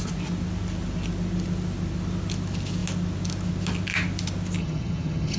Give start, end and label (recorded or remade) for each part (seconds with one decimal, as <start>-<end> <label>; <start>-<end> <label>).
0.0-4.6 recorded; 4.6-5.4 remade